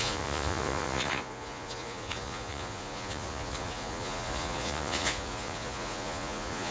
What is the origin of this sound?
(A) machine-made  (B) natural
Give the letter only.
A